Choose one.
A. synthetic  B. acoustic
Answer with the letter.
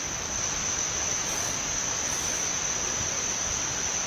B